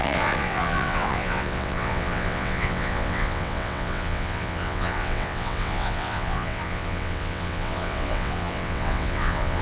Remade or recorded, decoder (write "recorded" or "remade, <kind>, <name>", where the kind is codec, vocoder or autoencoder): remade, vocoder, WaveNeXt